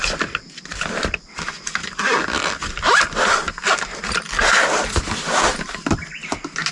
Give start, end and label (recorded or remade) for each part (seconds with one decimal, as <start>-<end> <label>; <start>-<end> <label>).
0.0-6.7 recorded